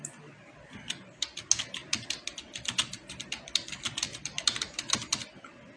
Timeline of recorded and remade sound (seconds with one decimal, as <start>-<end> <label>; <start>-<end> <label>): 0.0-5.8 recorded